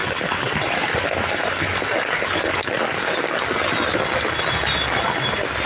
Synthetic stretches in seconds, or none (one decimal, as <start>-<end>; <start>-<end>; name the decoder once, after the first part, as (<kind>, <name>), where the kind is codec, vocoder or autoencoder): 0.0-3.4 (codec, DAC)